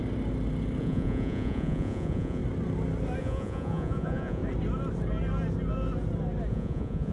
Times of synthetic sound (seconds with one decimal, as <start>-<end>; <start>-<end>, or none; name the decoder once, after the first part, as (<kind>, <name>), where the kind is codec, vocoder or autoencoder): 0.8-2.4 (vocoder, Vocos); 3.2-4.4; 6.5-7.1